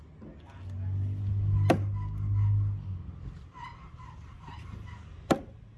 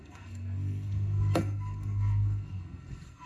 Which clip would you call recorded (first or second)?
first